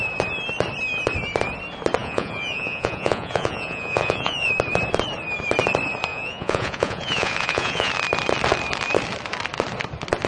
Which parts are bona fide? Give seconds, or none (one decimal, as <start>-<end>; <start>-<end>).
0.0-2.0; 4.5-6.1; 7.9-10.3